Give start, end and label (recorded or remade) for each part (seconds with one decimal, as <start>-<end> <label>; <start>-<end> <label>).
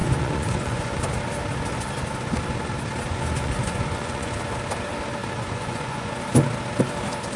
0.0-1.0 remade; 1.0-3.1 recorded; 3.1-4.3 remade; 4.3-5.2 recorded; 5.2-6.2 remade; 6.2-7.4 recorded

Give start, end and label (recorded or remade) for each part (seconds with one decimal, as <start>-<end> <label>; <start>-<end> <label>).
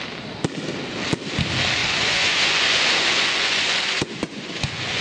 0.0-1.8 recorded; 1.8-5.0 remade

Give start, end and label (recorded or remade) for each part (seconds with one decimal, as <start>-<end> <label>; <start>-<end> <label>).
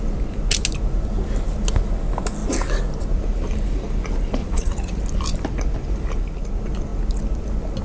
0.0-4.4 recorded; 4.4-5.0 remade; 5.0-7.8 recorded